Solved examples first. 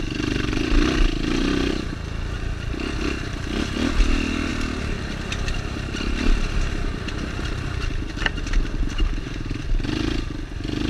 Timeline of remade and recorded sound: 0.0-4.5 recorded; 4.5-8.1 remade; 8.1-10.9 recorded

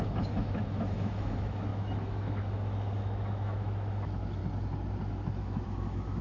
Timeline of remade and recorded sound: 0.0-4.4 remade; 4.4-5.1 recorded; 5.1-6.2 remade

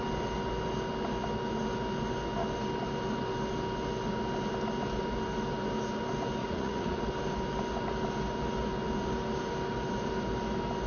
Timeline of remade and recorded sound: 0.0-6.4 recorded; 6.4-7.0 remade; 7.0-10.9 recorded

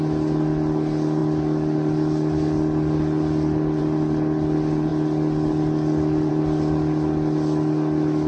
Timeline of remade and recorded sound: 0.0-8.3 recorded